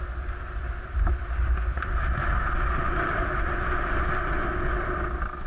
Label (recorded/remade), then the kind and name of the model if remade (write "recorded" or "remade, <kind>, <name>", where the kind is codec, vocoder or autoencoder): recorded